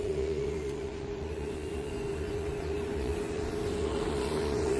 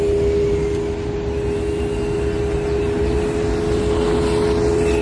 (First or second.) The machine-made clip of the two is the first